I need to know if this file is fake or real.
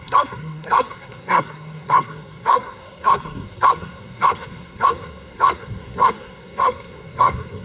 fake